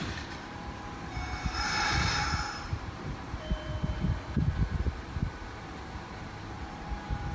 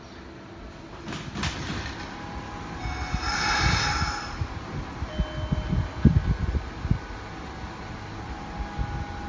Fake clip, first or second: first